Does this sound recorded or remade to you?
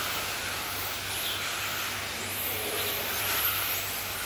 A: recorded